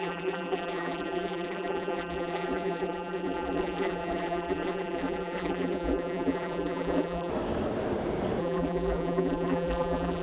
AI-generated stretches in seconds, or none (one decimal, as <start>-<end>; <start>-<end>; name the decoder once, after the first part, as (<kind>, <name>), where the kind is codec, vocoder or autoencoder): 0.0-7.3 (vocoder, BigVGAN v2); 8.4-10.2